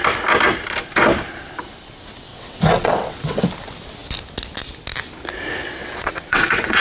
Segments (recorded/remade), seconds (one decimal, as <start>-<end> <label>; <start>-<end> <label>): 0.0-2.3 recorded; 2.3-3.4 remade; 3.4-5.8 recorded; 5.8-6.8 remade